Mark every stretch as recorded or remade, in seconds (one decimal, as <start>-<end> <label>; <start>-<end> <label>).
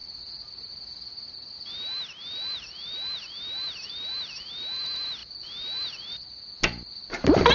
0.0-7.5 recorded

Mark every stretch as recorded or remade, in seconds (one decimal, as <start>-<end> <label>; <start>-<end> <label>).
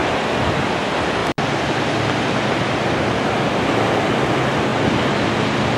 0.0-0.6 remade; 0.6-4.7 recorded; 4.7-5.8 remade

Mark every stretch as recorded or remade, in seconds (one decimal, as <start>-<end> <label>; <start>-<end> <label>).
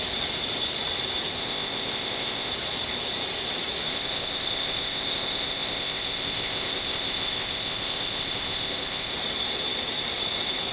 0.0-1.4 recorded; 1.4-2.5 remade; 2.5-3.9 recorded; 3.9-9.1 remade; 9.1-10.7 recorded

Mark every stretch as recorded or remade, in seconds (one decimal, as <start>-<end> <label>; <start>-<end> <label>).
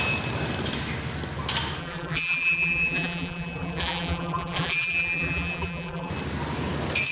0.0-1.8 recorded; 1.8-6.1 remade; 6.1-7.1 recorded